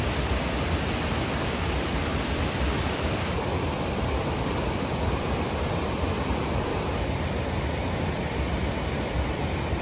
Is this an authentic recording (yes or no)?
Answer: no